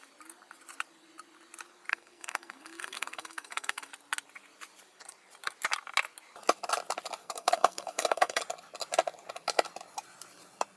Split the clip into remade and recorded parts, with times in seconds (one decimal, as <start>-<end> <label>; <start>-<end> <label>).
0.0-1.9 recorded; 1.9-3.9 remade; 3.9-7.2 recorded; 7.2-8.4 remade; 8.4-10.8 recorded